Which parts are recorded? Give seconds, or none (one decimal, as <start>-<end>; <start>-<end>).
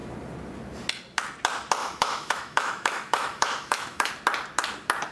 0.0-1.8; 4.1-5.1